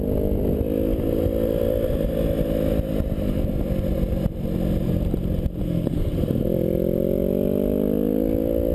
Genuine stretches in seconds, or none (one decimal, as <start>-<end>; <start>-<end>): 0.0-5.6; 6.1-8.7